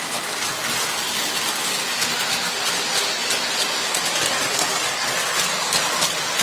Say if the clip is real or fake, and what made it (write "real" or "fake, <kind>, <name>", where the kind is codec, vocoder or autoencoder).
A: real